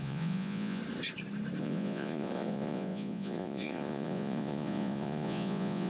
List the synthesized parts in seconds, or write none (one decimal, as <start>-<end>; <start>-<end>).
0.0-0.8; 1.6-5.9